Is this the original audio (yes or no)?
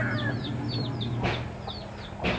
yes